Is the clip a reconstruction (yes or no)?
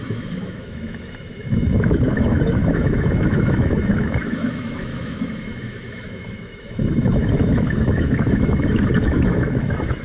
yes